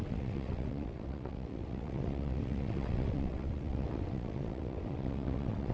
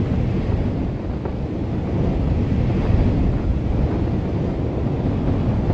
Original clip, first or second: second